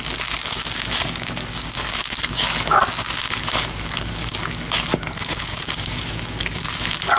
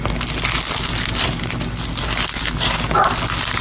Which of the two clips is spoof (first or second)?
first